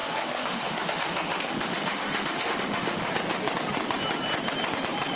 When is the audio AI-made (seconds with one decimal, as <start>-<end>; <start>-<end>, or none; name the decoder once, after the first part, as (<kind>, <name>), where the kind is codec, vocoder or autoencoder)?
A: 0.0-3.1 (autoencoder, DAC-VAE)